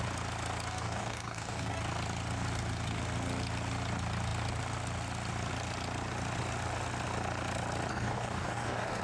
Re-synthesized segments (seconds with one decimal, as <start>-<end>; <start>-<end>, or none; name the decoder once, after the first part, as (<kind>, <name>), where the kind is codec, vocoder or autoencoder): 0.7-1.8 (codec, DAC); 7.9-9.0